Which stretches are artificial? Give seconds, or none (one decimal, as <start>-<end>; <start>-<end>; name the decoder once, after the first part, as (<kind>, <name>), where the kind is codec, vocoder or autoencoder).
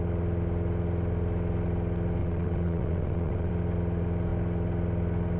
2.2-3.5 (vocoder, WaveNeXt)